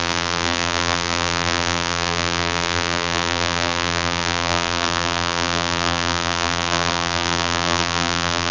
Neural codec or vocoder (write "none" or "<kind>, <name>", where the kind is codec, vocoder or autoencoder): vocoder, BigVGAN v2